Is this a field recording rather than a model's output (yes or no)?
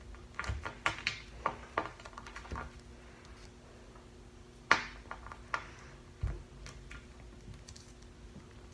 yes